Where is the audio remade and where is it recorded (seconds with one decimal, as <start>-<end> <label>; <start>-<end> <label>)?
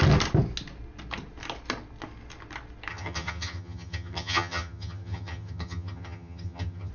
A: 0.0-2.9 recorded; 2.9-6.9 remade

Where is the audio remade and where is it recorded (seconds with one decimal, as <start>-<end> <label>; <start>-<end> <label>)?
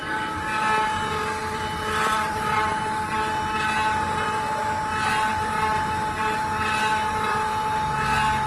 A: 0.0-1.4 recorded; 1.4-2.7 remade; 2.7-8.5 recorded